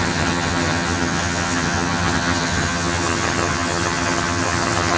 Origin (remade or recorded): remade